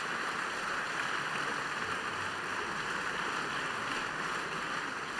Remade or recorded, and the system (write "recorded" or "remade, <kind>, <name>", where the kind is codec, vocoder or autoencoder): recorded